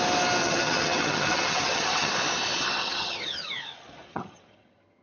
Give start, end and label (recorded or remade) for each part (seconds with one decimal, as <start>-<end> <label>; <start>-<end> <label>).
0.0-0.4 recorded; 0.4-2.1 remade; 2.1-2.8 recorded; 2.8-3.5 remade; 3.5-4.1 recorded; 4.1-5.0 remade